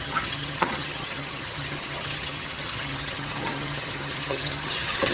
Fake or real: fake